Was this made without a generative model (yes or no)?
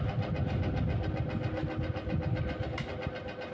yes